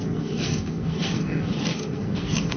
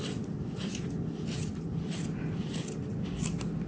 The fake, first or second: first